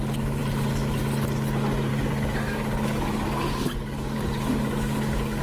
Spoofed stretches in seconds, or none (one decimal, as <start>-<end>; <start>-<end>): 1.9-5.4